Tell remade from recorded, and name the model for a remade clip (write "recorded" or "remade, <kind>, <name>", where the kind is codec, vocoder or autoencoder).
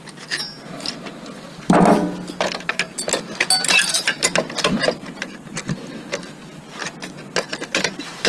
recorded